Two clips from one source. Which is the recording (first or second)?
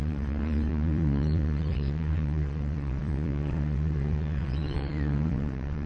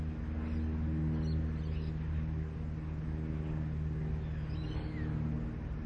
second